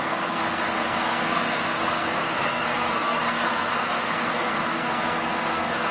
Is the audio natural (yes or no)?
no